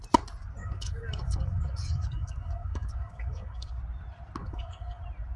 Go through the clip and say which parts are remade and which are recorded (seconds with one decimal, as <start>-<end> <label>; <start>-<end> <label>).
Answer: 0.0-0.6 recorded; 0.6-3.8 remade; 3.8-4.4 recorded; 4.4-5.0 remade; 5.0-5.4 recorded